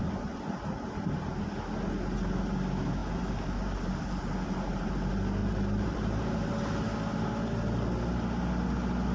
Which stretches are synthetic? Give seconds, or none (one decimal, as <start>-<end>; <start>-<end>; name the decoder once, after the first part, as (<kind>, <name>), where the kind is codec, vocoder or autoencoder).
3.0-4.9 (vocoder, BigVGAN v2); 5.4-6.5